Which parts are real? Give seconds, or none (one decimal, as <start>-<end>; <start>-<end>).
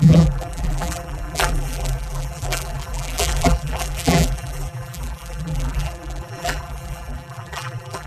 none